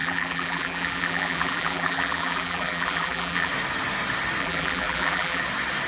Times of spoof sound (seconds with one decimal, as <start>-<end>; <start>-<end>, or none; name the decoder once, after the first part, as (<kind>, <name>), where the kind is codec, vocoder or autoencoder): 0.0-3.5 (vocoder, BigVGAN v2); 4.4-5.4